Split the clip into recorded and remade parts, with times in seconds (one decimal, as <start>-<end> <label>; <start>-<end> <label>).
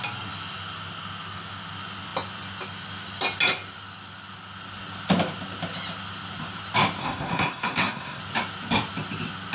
0.0-7.0 recorded; 7.0-8.2 remade; 8.2-9.5 recorded